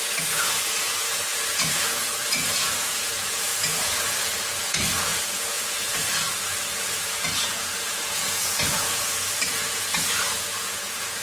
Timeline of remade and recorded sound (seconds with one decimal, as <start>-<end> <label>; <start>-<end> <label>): 0.0-11.2 remade